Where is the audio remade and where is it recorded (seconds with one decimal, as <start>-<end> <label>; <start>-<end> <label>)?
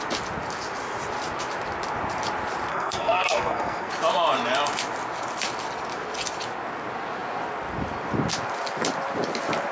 0.0-2.7 recorded; 2.7-3.9 remade; 3.9-9.7 recorded